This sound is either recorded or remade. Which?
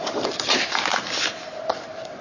recorded